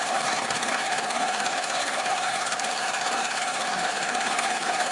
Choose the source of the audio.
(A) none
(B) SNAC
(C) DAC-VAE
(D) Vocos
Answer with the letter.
B